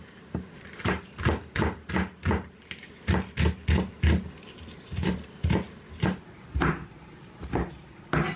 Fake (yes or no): no